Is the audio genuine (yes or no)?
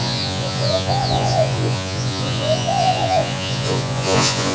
no